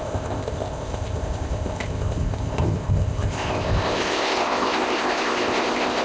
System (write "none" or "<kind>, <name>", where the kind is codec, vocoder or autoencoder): codec, ZipCodec